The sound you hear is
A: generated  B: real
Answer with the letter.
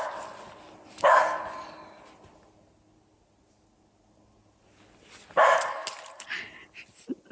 B